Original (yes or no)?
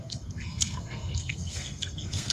no